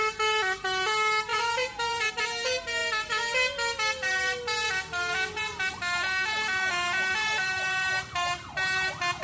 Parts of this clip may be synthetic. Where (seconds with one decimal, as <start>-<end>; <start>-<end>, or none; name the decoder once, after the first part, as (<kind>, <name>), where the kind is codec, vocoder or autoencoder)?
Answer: 1.3-2.1 (vocoder, Vocos)